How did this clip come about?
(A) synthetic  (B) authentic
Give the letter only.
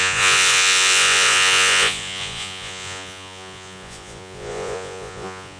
A